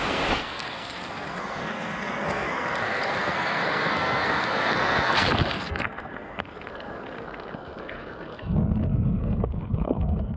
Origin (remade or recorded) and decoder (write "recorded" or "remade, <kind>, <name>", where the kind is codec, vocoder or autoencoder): remade, codec, SNAC